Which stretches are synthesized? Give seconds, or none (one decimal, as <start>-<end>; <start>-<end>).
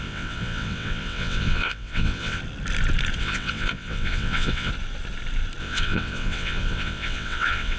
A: 0.0-2.4; 3.2-4.7; 5.6-7.8